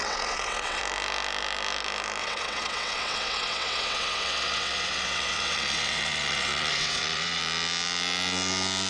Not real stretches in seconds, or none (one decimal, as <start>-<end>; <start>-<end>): 0.0-0.8; 2.2-7.4